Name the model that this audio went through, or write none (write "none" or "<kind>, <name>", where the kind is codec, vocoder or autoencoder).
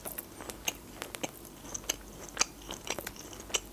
none